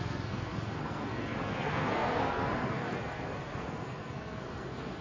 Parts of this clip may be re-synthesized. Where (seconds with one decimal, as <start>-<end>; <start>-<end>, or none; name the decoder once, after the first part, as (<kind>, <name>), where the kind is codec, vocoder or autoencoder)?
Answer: 0.0-5.0 (codec, SNAC)